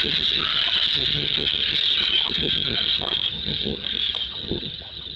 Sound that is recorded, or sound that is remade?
remade